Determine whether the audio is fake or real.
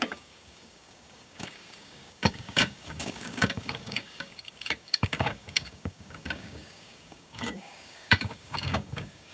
fake